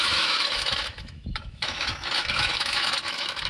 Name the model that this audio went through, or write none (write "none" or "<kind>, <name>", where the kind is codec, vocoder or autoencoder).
autoencoder, DAC-VAE